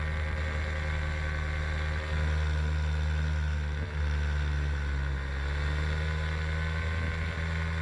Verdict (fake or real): real